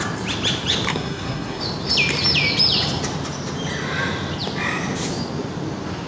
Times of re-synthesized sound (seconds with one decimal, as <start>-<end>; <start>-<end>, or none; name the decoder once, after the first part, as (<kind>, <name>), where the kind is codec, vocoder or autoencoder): 0.9-1.6 (codec, SNAC)